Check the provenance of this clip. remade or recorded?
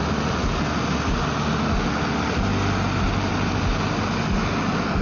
recorded